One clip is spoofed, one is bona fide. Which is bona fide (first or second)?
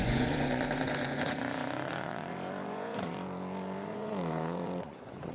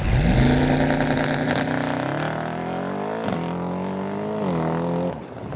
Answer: second